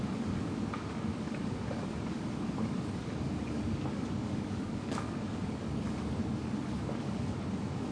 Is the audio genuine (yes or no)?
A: no